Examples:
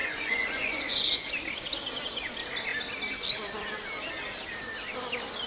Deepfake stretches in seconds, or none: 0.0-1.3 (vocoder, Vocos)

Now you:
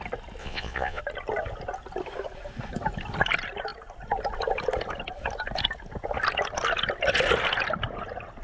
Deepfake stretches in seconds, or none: 0.4-1.0 (vocoder, Vocos)

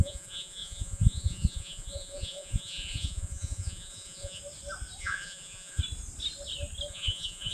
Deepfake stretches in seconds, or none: 0.0-4.4 (vocoder, Vocos); 5.0-5.8; 6.9-7.5

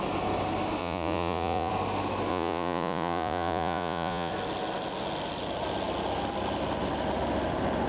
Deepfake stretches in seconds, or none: 0.8-1.7 (vocoder, Vocos); 2.3-4.3